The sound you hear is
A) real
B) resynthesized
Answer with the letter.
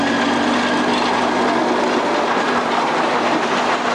A